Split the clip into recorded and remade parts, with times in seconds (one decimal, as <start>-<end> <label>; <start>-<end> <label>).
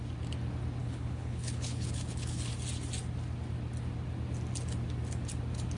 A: 0.0-0.8 recorded; 0.8-2.5 remade; 2.5-5.8 recorded